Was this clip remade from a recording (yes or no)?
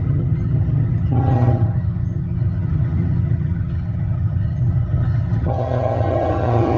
yes